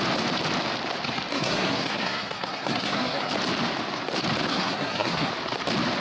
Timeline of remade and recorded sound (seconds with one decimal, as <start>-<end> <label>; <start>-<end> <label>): 0.0-1.3 recorded; 1.3-3.3 remade; 3.3-4.5 recorded; 4.5-5.3 remade; 5.3-6.0 recorded